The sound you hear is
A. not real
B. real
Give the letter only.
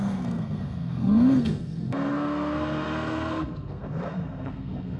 A